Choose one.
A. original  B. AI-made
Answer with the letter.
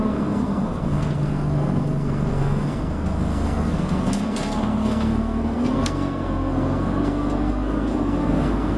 B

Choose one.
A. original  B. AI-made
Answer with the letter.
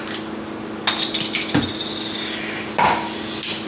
A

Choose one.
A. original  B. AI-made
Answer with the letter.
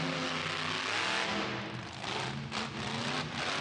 A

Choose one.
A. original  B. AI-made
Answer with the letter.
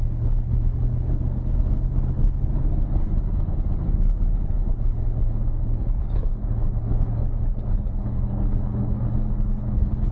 B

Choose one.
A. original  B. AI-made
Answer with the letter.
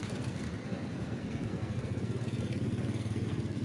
B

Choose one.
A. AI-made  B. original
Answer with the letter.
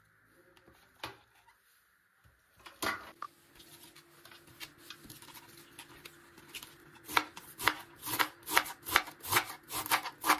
B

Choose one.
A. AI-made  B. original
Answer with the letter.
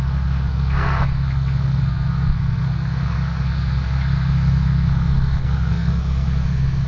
A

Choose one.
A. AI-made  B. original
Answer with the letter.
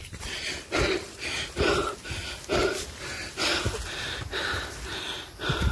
B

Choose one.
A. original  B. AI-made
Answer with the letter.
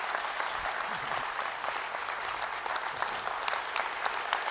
A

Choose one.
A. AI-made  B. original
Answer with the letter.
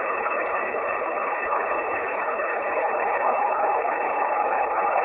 A